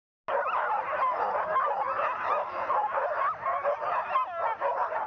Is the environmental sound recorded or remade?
recorded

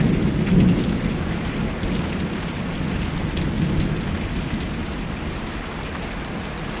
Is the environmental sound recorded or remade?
recorded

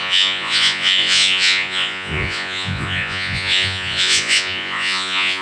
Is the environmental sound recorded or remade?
remade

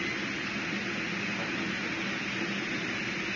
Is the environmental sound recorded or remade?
recorded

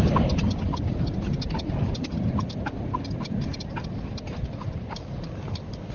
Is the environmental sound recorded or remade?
recorded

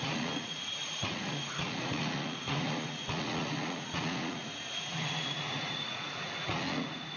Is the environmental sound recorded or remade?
remade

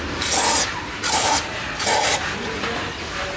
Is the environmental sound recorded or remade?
recorded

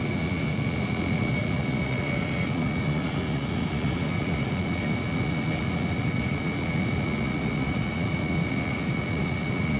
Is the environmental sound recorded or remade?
remade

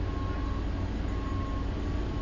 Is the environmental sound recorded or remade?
recorded